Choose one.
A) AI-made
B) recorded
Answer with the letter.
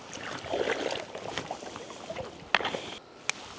B